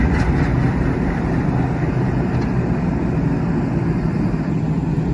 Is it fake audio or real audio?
real